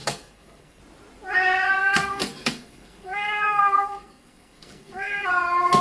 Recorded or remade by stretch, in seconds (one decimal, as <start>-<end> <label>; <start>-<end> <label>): 0.0-0.8 remade; 0.8-1.8 recorded; 1.8-5.3 remade; 5.3-5.8 recorded